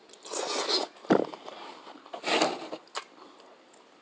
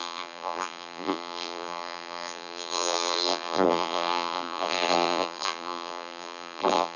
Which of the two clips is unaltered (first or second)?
first